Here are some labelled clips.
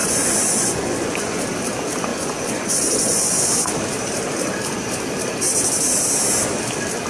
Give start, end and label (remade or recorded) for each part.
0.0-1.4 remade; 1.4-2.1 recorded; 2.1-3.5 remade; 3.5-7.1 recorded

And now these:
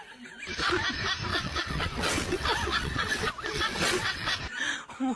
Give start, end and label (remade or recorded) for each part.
0.0-1.3 recorded; 1.3-4.4 remade; 4.4-5.2 recorded

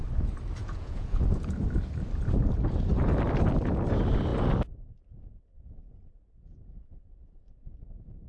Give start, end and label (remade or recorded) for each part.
0.0-0.6 recorded; 0.6-1.5 remade; 1.5-8.3 recorded

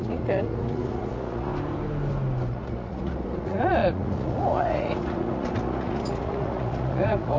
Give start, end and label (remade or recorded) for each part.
0.0-1.5 remade; 1.5-2.5 recorded; 2.5-7.4 remade

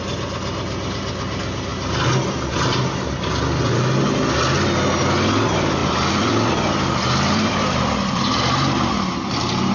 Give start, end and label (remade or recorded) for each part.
0.0-5.8 recorded; 5.8-8.9 remade; 8.9-9.7 recorded

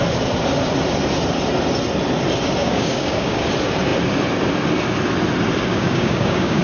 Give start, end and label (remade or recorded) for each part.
0.0-2.6 recorded; 2.6-3.4 remade; 3.4-5.7 recorded; 5.7-6.6 remade

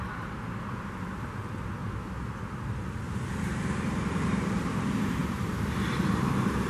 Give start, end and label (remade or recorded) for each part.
0.0-1.8 remade; 1.8-3.4 recorded; 3.4-6.7 remade